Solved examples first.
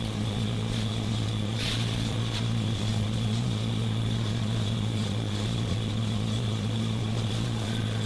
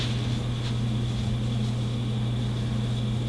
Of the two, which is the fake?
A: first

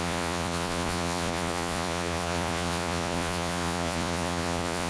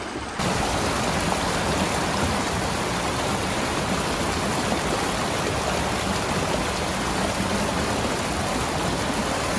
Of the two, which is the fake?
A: first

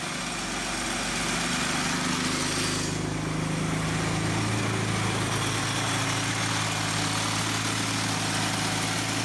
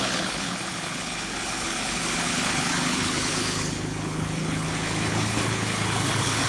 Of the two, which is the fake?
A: second